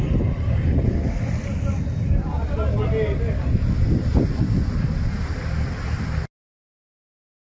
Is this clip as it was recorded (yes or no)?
yes